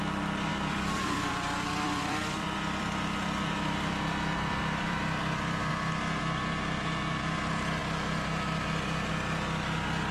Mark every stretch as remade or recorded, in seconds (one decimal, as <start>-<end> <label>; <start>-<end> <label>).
0.0-0.5 recorded; 0.5-5.7 remade; 5.7-10.1 recorded